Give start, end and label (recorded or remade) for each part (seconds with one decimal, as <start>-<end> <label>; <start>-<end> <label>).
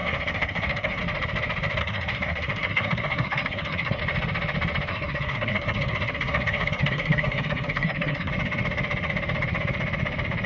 0.0-1.0 remade; 1.0-1.8 recorded; 1.8-4.0 remade; 4.0-4.9 recorded; 4.9-8.3 remade; 8.3-10.5 recorded